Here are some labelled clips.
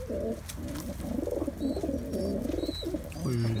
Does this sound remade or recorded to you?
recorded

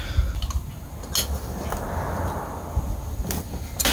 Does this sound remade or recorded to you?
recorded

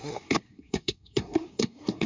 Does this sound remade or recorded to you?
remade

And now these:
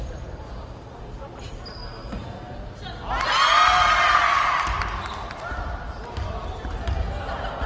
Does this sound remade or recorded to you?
recorded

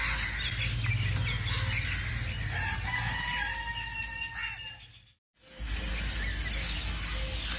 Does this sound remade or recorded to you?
recorded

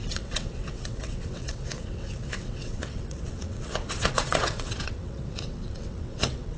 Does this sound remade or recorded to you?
remade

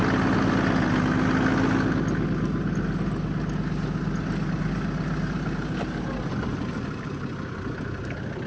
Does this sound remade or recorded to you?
recorded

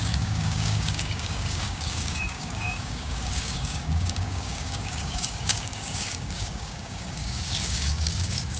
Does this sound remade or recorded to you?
remade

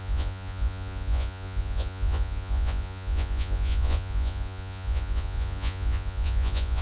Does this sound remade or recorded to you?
remade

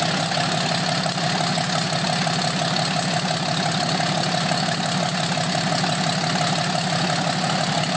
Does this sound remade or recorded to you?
recorded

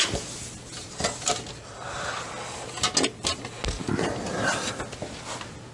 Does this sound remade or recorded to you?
recorded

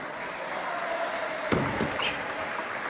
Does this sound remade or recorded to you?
recorded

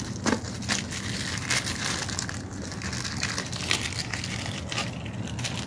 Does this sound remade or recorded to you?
recorded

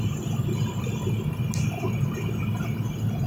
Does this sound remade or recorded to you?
recorded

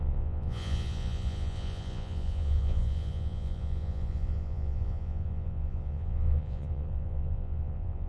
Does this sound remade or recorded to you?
remade